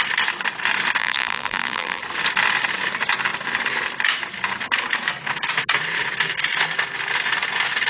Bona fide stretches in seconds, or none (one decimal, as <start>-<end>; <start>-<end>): 0.0-1.0; 2.0-7.9